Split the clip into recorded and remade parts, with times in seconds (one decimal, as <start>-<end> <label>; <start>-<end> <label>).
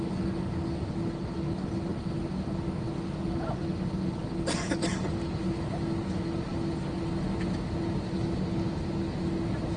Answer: 0.0-9.8 recorded